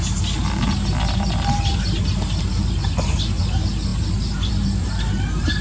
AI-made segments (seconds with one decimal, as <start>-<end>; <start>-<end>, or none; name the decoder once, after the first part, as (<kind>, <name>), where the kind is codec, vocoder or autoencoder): none